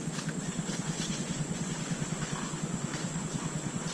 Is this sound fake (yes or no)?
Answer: yes